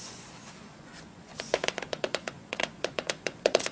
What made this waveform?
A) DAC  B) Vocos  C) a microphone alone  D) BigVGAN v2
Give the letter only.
B